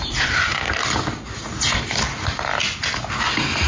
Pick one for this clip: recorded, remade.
recorded